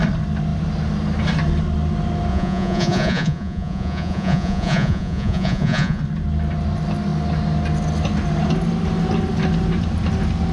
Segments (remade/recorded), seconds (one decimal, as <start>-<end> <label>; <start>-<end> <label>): 0.0-2.3 recorded; 2.3-6.0 remade; 6.0-10.5 recorded